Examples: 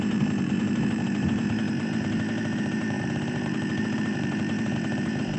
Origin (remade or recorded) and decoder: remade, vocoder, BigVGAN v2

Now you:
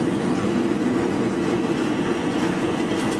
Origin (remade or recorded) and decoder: remade, vocoder, Vocos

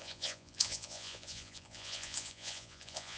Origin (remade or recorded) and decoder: remade, vocoder, Vocos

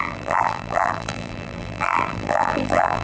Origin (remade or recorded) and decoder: remade, vocoder, BigVGAN v2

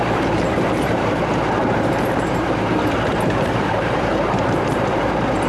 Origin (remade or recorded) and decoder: remade, vocoder, BigVGAN v2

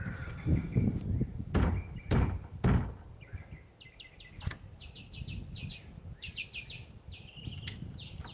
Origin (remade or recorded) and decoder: recorded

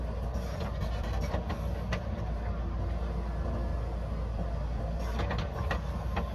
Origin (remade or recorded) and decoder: recorded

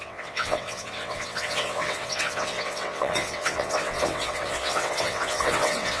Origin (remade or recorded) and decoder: remade, vocoder, WaveNeXt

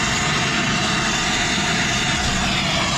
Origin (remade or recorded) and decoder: recorded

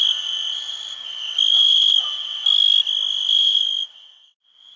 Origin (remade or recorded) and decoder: recorded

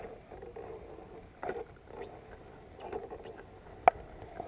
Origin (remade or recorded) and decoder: recorded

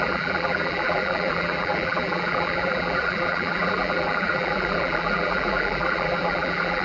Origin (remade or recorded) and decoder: remade, vocoder, BigVGAN v2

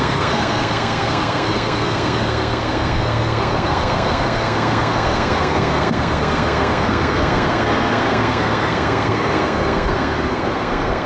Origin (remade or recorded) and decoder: remade, codec, SNAC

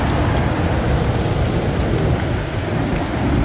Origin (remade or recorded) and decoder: recorded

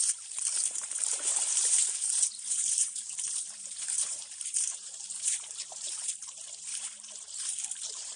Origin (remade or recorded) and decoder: remade, vocoder, BigVGAN v2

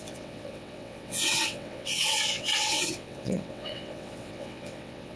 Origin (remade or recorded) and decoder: remade, vocoder, WaveNeXt